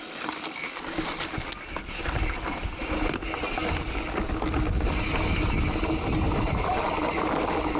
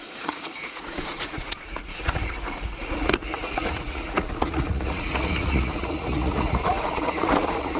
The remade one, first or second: second